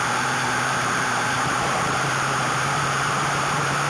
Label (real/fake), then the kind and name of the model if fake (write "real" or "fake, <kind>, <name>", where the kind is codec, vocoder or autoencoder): fake, vocoder, BigVGAN v2